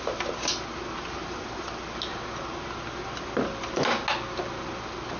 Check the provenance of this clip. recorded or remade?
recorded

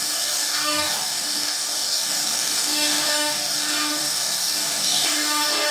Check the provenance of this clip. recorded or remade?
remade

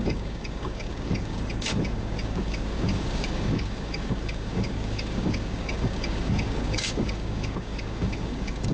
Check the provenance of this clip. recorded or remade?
remade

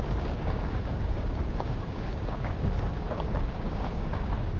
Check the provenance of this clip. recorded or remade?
remade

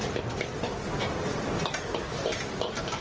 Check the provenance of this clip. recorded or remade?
recorded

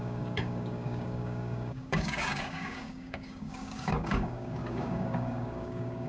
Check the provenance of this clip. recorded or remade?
remade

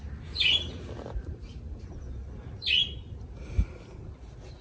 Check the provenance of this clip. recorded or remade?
recorded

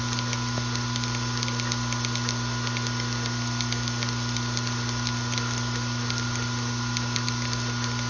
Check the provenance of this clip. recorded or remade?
recorded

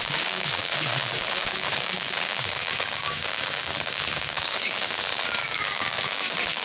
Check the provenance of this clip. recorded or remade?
remade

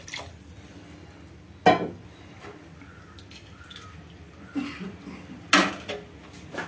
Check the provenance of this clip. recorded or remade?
recorded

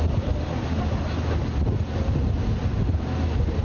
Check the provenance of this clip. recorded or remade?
recorded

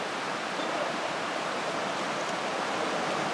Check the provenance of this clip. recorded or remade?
recorded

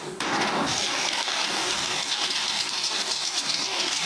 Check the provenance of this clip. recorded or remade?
remade